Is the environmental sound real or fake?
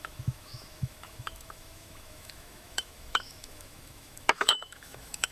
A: fake